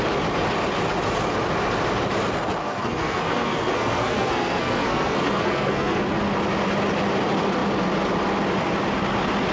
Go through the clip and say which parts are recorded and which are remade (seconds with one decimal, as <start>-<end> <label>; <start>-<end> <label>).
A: 0.0-2.6 recorded; 2.6-6.0 remade; 6.0-9.5 recorded